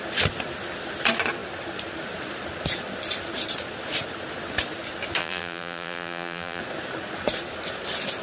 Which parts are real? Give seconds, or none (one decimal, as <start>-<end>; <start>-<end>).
0.0-5.2; 6.6-8.2